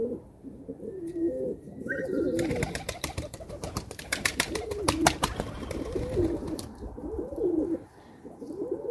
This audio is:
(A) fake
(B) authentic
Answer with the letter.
A